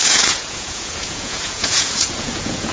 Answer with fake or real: fake